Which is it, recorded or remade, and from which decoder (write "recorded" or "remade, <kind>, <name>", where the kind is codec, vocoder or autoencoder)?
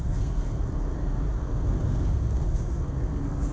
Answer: remade, codec, SNAC